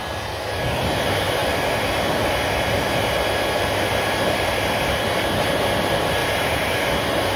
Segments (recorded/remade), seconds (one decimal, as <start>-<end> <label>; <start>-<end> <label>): 0.0-6.2 recorded; 6.2-7.0 remade; 7.0-7.4 recorded